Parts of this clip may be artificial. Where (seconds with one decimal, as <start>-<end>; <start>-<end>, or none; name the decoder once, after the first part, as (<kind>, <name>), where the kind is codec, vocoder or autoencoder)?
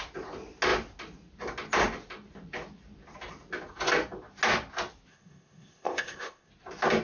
5.1-6.5 (codec, ZipCodec)